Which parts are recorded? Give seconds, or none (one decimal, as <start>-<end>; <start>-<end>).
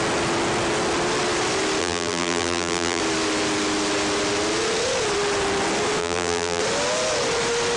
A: 0.0-1.8; 3.0-6.0; 6.6-7.8